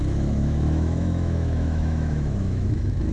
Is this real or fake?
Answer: fake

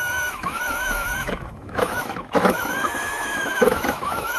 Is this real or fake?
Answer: fake